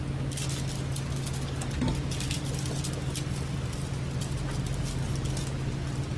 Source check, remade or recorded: recorded